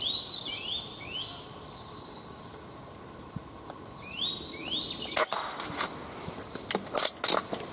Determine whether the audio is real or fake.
real